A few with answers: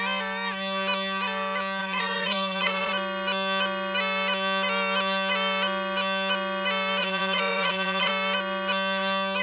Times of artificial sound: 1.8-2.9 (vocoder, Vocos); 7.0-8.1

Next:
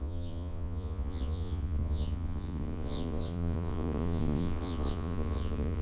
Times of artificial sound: 0.0-5.8 (vocoder, Vocos)

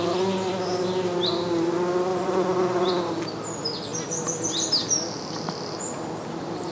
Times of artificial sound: 2.1-2.9 (vocoder, Vocos)